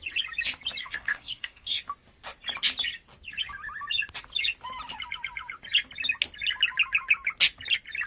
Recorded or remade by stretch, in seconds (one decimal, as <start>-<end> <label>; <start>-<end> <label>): 0.0-0.8 recorded; 0.8-1.8 remade; 1.8-8.1 recorded